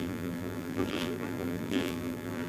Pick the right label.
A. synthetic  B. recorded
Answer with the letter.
A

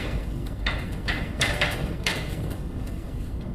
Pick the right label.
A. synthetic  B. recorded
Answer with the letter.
A